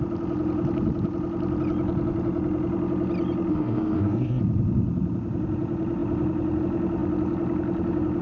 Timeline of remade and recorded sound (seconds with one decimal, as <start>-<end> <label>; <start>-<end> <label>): 0.0-3.5 recorded; 3.5-4.4 remade; 4.4-8.2 recorded